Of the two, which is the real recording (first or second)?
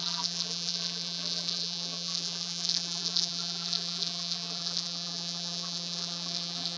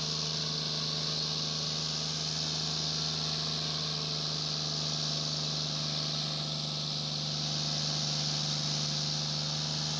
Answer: second